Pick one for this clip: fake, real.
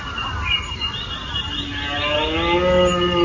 real